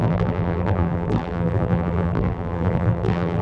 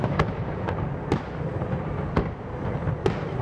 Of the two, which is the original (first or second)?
second